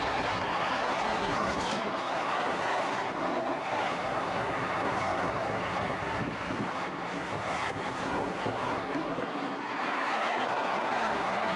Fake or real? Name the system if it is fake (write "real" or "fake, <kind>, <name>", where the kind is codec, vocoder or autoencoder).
fake, codec, SNAC